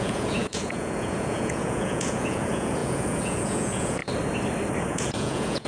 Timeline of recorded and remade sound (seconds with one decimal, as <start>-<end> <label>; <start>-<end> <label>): 0.0-4.0 remade; 4.0-4.8 recorded; 4.8-5.7 remade

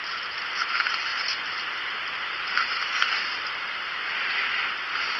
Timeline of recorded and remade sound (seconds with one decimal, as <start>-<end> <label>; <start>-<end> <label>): 0.0-5.2 recorded

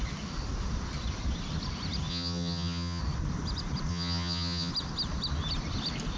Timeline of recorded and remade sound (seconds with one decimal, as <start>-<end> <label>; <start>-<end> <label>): 0.0-2.1 recorded; 2.1-3.0 remade; 3.0-3.9 recorded; 3.9-4.7 remade; 4.7-6.2 recorded

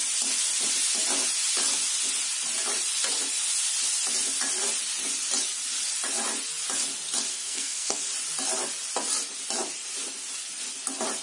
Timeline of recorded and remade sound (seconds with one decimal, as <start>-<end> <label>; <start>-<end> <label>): 0.0-7.3 recorded; 7.3-8.0 remade; 8.0-11.2 recorded

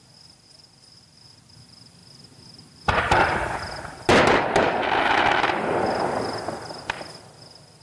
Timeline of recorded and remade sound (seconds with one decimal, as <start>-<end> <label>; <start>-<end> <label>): 0.0-7.8 recorded